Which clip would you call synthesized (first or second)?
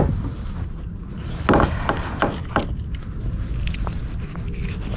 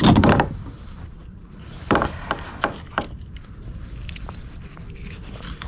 second